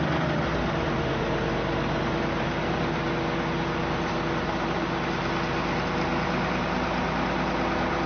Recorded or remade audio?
recorded